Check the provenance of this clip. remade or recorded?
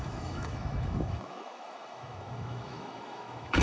remade